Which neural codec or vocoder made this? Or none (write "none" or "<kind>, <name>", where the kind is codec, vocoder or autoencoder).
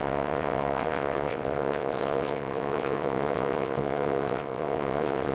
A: vocoder, WaveNeXt